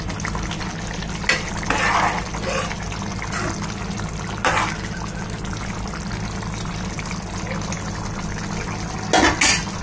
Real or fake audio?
real